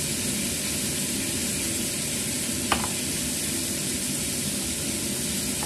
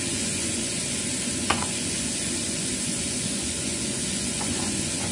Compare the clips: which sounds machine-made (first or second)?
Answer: second